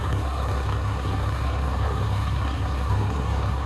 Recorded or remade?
remade